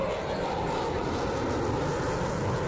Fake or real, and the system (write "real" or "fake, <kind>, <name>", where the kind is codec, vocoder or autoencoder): real